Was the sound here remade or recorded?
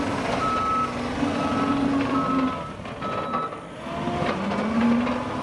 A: recorded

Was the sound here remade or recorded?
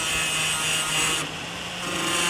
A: recorded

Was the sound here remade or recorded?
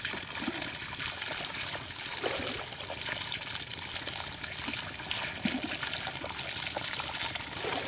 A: recorded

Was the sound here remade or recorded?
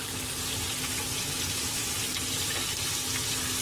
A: recorded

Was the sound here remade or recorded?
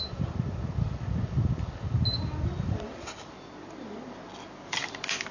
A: remade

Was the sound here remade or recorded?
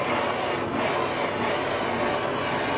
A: recorded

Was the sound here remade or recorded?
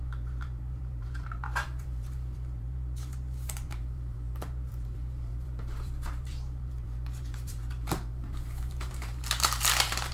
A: remade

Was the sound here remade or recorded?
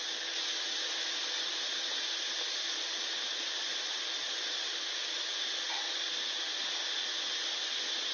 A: recorded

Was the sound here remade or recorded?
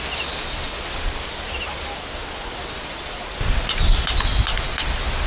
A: recorded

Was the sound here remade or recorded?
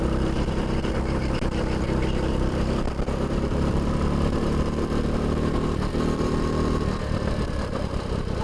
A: remade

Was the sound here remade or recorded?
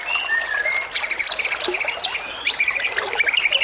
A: recorded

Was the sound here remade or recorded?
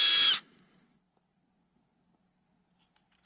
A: recorded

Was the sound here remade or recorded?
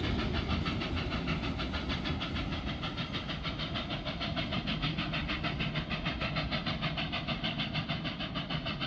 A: recorded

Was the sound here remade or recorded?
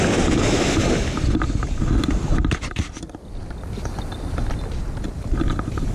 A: recorded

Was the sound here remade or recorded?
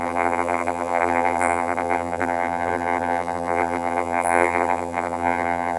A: remade